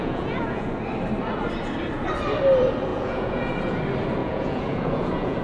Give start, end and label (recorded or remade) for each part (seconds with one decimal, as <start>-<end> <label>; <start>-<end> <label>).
0.0-0.7 remade; 0.7-2.9 recorded; 2.9-3.8 remade; 3.8-4.2 recorded; 4.2-5.4 remade